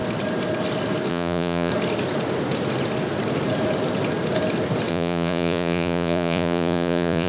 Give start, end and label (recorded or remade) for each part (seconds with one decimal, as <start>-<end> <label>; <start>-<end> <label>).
0.0-1.1 recorded; 1.1-1.7 remade; 1.7-4.9 recorded; 4.9-7.3 remade